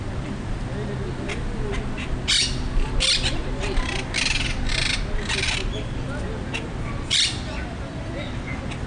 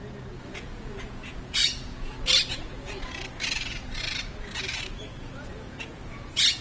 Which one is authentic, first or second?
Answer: first